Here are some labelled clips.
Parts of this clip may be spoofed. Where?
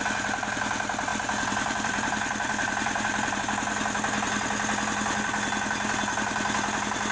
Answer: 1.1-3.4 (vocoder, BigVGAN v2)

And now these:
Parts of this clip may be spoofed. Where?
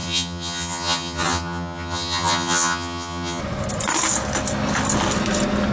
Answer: 0.0-3.4 (vocoder, HiFi-GAN)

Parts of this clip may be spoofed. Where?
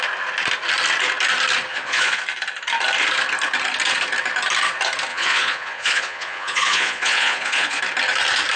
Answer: 1.7-2.2 (vocoder, Vocos); 5.1-7.8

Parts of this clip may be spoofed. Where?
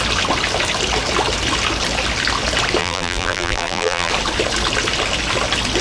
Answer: 2.8-4.1 (vocoder, BigVGAN v2)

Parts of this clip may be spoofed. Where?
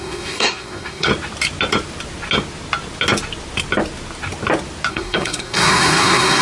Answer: 0.0-1.1 (codec, SNAC); 4.9-6.4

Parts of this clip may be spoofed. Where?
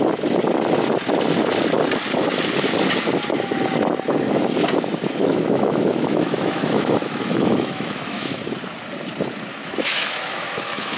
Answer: 5.2-8.4 (autoencoder, DAC-VAE); 9.5-11.0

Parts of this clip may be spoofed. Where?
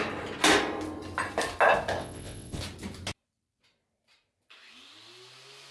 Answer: 2.0-2.6 (vocoder, WaveNeXt)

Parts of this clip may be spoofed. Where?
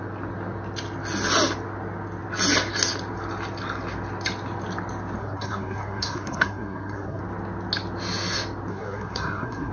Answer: 5.2-7.2 (codec, SNAC); 8.7-9.7